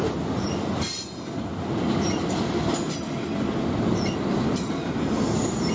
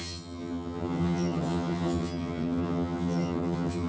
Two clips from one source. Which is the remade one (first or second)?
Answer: second